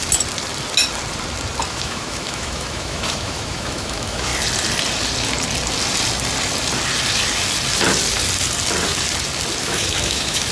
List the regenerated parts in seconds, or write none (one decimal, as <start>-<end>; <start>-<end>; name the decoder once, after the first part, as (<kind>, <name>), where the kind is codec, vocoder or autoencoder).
1.7-4.3 (autoencoder, DAC-VAE); 9.6-10.5